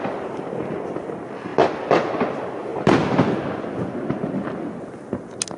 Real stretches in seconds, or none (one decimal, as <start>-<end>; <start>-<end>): 0.0-5.6